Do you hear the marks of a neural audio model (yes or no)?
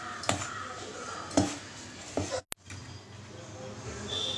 no